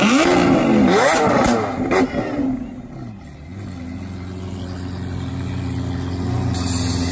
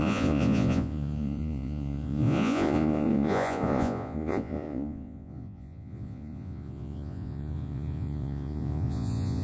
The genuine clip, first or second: first